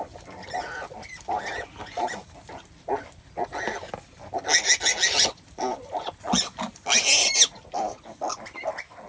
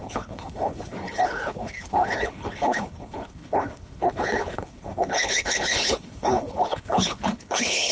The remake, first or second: second